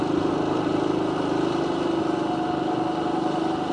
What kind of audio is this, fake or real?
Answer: real